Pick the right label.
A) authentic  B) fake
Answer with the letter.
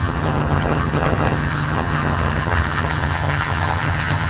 B